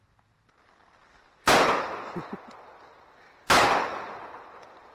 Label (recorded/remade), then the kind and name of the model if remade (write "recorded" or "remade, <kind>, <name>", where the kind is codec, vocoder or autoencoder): recorded